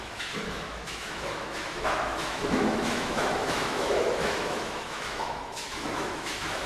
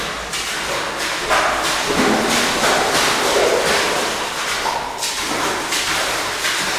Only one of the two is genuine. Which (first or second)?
second